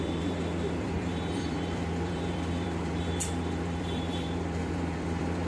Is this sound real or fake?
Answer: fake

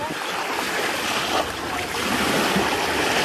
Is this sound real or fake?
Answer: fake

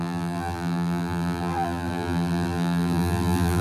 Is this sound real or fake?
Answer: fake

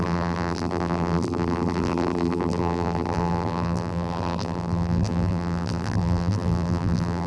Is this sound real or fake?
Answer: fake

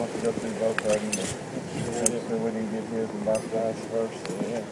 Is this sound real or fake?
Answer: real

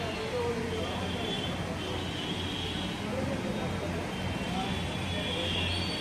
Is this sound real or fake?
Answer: real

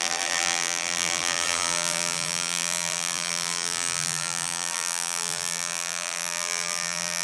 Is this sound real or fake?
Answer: fake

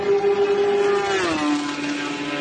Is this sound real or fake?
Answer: real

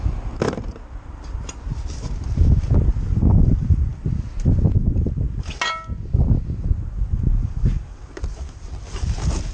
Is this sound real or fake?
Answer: real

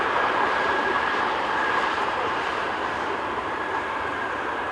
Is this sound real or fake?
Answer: fake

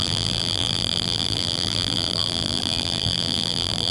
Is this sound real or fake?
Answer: fake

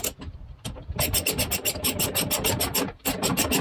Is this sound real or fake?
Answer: real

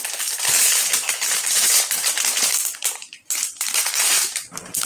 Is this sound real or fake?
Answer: fake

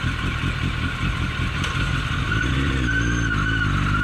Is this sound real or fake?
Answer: real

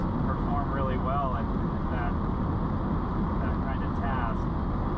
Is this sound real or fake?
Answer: real